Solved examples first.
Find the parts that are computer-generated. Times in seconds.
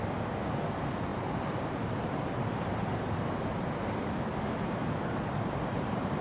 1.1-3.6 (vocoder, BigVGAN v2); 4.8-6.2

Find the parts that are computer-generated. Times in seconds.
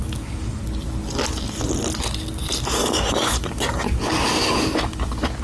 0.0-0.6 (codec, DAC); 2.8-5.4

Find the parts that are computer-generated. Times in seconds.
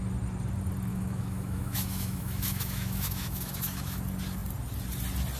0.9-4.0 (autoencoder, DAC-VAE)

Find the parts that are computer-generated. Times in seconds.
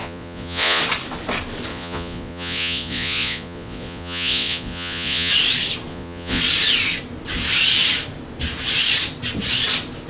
0.0-0.8 (vocoder, Vocos); 1.7-5.3; 5.9-6.4